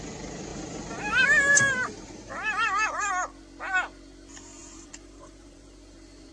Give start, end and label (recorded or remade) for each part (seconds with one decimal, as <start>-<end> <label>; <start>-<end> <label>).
0.0-0.5 recorded; 0.5-3.1 remade; 3.1-4.6 recorded; 4.6-6.3 remade